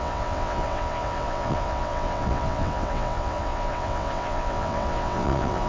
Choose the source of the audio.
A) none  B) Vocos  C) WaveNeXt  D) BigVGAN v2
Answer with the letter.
C